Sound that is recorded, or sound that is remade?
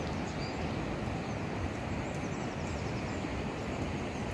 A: recorded